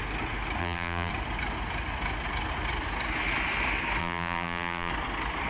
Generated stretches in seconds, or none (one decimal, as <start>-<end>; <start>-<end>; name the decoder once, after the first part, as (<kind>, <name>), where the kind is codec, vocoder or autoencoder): 0.6-1.1 (vocoder, BigVGAN v2); 4.0-4.9